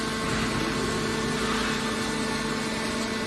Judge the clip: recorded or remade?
recorded